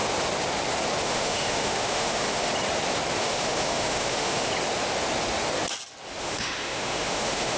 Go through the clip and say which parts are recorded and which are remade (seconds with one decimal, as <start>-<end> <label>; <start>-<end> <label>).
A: 0.0-1.0 recorded; 1.0-2.5 remade; 2.5-3.2 recorded; 3.2-4.5 remade; 4.5-6.2 recorded; 6.2-7.6 remade